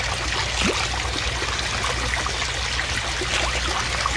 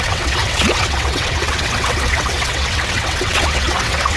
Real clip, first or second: first